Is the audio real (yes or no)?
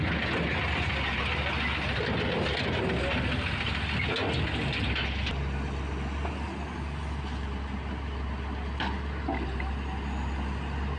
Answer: yes